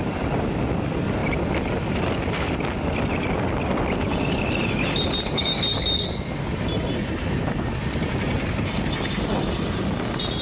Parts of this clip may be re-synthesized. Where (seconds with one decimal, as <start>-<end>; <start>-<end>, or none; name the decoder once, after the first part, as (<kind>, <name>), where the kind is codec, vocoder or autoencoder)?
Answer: none